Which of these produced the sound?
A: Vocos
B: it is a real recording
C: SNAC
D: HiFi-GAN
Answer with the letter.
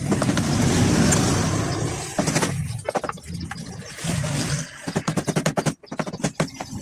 B